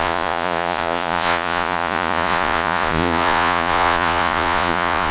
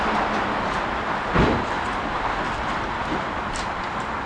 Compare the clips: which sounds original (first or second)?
second